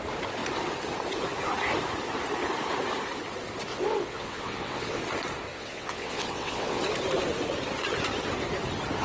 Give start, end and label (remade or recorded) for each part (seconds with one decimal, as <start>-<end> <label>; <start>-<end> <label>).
0.0-3.7 recorded; 3.7-5.0 remade; 5.0-5.5 recorded; 5.5-6.8 remade; 6.8-9.0 recorded